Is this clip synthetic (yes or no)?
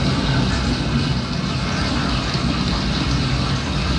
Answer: no